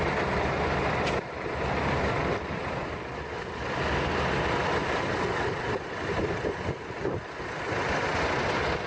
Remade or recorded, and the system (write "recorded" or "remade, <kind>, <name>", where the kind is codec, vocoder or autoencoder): remade, vocoder, BigVGAN v2